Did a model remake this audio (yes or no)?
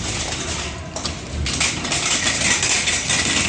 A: no